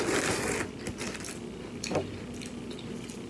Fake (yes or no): no